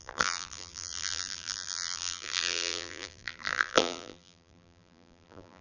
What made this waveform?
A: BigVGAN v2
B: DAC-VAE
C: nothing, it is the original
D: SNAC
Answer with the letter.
A